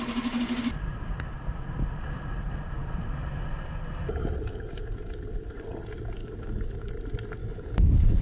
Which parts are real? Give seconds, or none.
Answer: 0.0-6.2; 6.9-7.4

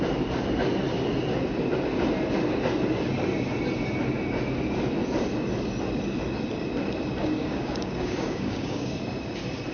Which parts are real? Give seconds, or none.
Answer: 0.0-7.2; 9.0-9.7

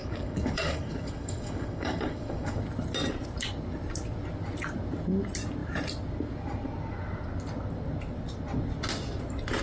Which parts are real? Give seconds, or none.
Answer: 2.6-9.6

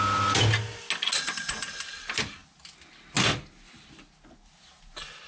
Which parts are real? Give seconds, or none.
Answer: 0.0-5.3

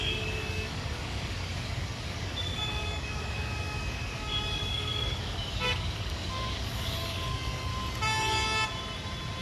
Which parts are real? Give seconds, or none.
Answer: 7.7-9.4

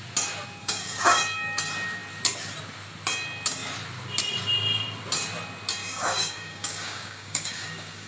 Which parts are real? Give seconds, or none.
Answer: 0.0-0.6; 1.2-5.8